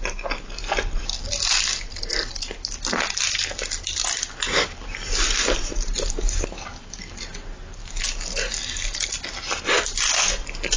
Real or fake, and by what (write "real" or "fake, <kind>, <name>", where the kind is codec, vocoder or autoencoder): real